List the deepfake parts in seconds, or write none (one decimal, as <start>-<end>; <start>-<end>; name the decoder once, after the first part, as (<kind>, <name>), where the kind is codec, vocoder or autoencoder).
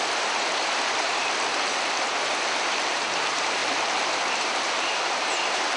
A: 0.0-1.2 (vocoder, BigVGAN v2); 2.9-3.6; 4.3-5.8